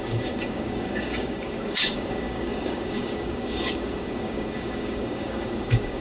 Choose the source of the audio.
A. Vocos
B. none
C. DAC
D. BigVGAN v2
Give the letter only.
C